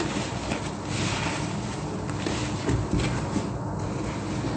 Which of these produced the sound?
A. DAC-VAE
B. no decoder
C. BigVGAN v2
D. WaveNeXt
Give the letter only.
B